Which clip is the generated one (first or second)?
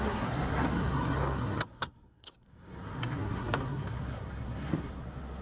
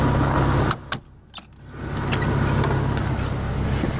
first